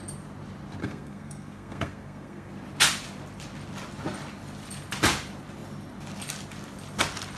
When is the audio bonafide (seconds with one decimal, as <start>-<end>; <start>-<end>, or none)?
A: 0.0-0.8; 2.5-7.4